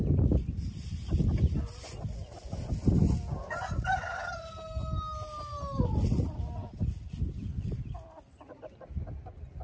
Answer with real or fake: real